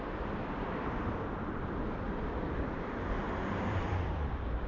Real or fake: fake